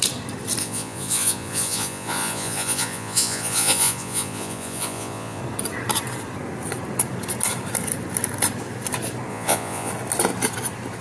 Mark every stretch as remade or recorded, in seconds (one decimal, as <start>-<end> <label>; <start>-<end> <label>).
0.0-0.6 recorded; 0.6-5.4 remade; 5.4-9.3 recorded; 9.3-9.9 remade; 9.9-11.0 recorded